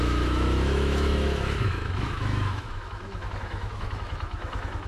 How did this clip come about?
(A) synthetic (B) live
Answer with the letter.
A